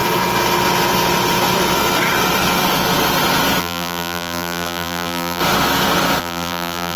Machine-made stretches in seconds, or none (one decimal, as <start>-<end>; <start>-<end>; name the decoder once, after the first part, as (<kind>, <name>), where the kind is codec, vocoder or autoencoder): 3.6-5.4 (vocoder, BigVGAN v2); 6.2-7.0